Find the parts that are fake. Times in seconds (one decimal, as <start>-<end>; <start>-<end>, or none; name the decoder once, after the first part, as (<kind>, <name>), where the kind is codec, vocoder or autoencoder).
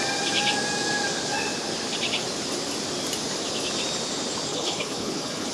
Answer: 4.5-5.5 (codec, HILCodec)